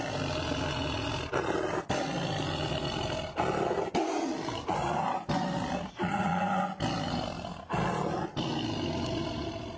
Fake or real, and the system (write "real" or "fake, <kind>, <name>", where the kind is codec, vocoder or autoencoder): real